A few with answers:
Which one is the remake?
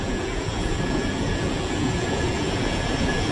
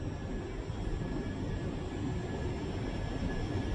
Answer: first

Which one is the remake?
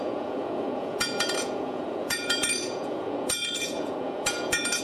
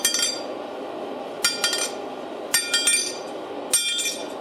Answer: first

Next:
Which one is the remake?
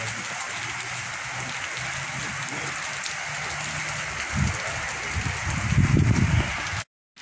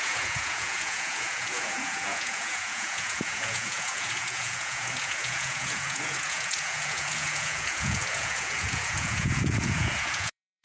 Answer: second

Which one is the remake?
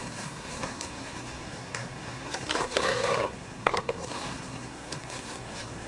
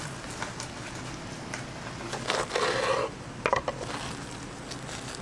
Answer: first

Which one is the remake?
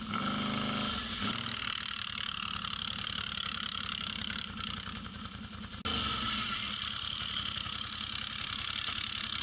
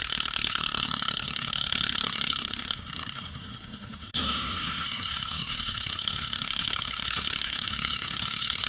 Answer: second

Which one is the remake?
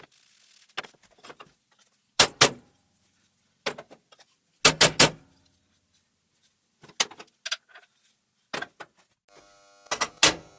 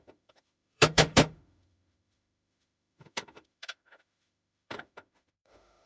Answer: second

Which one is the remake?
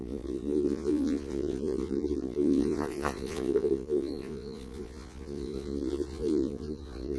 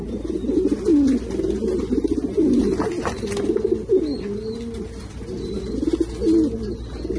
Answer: first